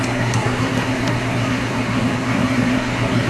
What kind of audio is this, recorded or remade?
remade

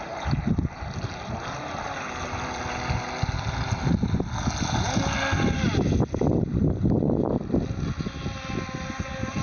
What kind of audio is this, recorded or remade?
recorded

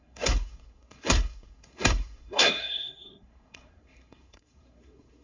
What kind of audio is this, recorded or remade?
remade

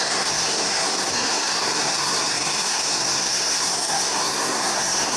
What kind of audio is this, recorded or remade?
remade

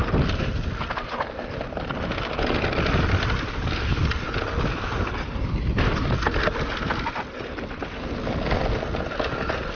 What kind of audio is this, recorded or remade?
recorded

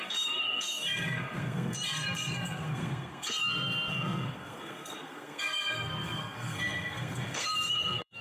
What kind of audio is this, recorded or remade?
remade